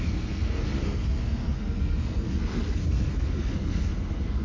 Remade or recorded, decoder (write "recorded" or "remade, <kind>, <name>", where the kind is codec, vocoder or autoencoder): remade, codec, SNAC